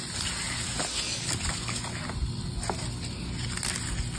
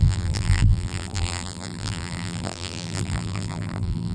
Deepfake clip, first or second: second